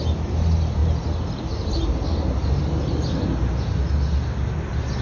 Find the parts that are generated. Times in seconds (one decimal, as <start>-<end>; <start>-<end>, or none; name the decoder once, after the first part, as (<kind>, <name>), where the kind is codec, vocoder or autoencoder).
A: none